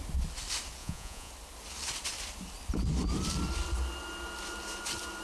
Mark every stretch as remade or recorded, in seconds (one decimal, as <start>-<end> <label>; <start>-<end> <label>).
0.0-0.8 recorded; 0.8-1.3 remade; 1.3-5.2 recorded